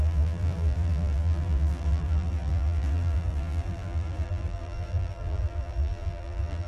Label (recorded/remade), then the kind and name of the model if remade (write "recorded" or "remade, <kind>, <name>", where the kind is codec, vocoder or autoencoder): remade, vocoder, BigVGAN v2